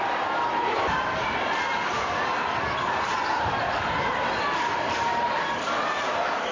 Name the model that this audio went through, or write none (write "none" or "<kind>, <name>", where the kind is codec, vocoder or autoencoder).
vocoder, BigVGAN v2